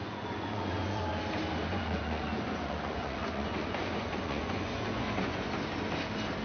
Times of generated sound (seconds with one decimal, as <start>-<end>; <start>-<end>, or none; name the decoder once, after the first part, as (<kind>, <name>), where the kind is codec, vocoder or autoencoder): 0.0-1.0 (vocoder, Vocos); 1.7-5.5